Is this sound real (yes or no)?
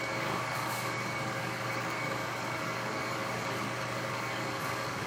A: no